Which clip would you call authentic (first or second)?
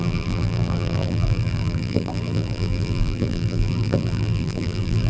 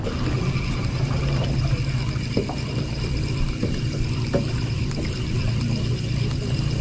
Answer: second